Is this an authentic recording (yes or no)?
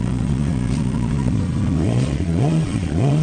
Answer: no